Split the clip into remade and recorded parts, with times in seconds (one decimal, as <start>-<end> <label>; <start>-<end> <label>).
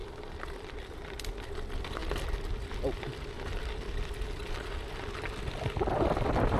0.0-0.5 recorded; 0.5-2.0 remade; 2.0-5.4 recorded; 5.4-6.6 remade